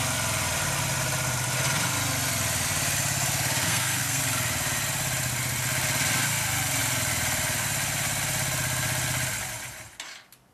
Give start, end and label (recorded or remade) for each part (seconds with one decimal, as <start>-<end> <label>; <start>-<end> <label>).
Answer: 0.0-3.6 recorded; 3.6-4.2 remade; 4.2-10.5 recorded